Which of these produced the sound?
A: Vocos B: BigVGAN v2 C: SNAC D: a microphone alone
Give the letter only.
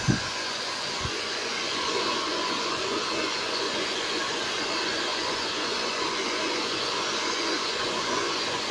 A